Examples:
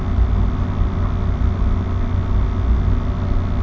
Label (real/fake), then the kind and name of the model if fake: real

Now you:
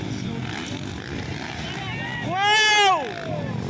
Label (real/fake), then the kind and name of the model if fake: real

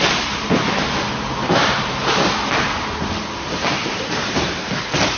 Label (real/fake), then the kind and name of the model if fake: real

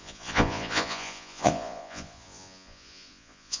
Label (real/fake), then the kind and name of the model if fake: fake, vocoder, Vocos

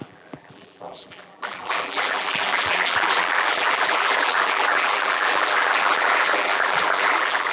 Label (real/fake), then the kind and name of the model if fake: fake, vocoder, BigVGAN v2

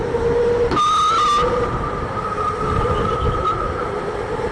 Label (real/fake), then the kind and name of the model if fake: real